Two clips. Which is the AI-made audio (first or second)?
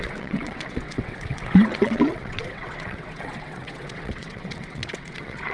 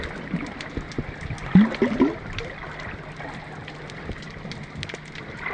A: first